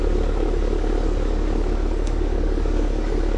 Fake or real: fake